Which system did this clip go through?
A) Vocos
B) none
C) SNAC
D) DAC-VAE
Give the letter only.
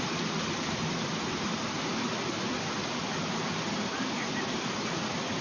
B